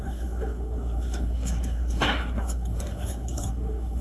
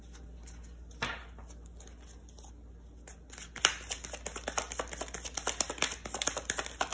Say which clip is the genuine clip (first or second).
second